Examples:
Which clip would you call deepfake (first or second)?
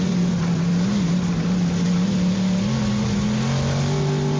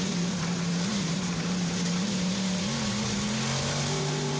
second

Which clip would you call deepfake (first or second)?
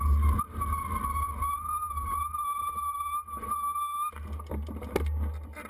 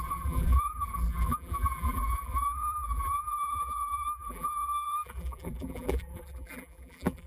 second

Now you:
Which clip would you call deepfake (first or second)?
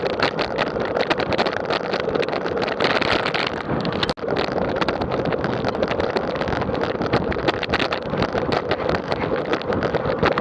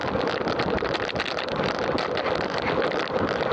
second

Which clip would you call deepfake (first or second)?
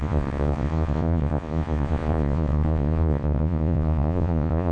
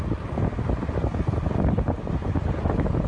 first